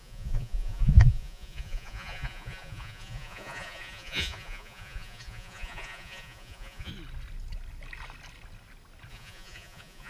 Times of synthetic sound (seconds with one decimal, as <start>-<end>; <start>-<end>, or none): 0.0-6.9; 9.1-10.1